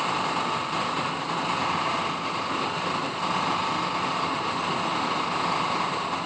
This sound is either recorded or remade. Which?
recorded